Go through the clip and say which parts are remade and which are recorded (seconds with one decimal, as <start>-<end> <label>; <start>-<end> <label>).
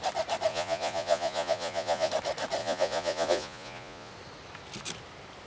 0.0-0.5 recorded; 0.5-2.1 remade; 2.1-2.6 recorded; 2.6-4.1 remade; 4.1-5.5 recorded